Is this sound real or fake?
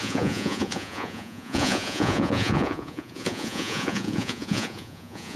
fake